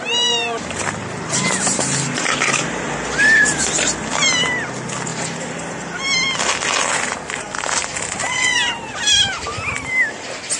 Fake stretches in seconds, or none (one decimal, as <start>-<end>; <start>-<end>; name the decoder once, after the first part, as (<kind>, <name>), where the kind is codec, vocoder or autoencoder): none